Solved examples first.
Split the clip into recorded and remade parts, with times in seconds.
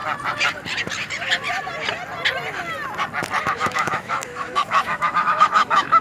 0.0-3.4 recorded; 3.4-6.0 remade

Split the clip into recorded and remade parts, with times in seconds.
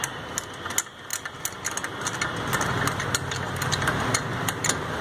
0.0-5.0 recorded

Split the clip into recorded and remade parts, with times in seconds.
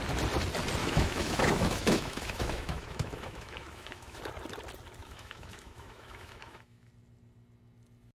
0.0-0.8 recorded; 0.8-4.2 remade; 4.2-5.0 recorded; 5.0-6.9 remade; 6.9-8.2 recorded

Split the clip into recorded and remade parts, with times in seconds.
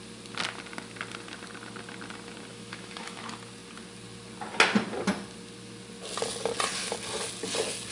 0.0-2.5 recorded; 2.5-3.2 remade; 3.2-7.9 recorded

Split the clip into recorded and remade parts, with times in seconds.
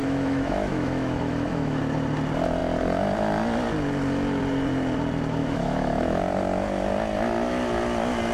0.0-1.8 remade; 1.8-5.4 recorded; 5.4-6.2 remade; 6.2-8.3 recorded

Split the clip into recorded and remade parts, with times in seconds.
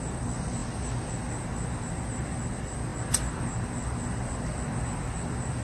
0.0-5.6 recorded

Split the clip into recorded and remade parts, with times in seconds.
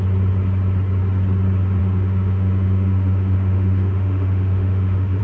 0.0-1.8 recorded; 1.8-5.2 remade